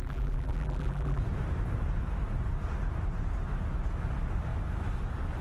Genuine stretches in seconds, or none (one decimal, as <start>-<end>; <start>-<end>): 1.2-5.4